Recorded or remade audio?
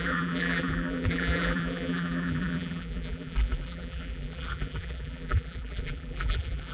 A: remade